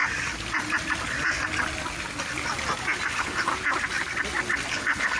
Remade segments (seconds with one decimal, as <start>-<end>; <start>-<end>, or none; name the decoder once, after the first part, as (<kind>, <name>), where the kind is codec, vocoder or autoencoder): 3.1-3.5 (codec, HILCodec); 4.7-5.2